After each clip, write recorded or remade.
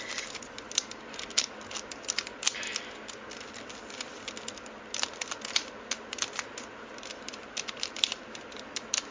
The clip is recorded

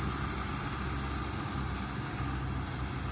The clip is recorded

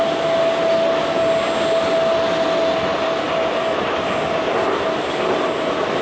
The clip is recorded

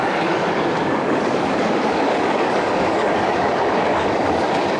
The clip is remade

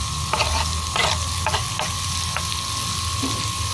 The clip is recorded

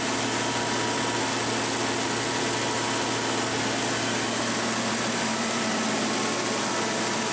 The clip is recorded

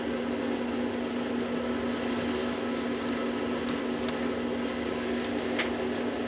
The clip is recorded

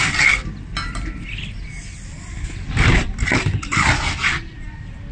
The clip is recorded